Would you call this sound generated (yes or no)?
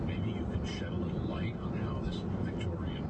no